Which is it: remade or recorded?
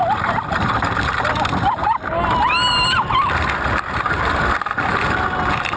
remade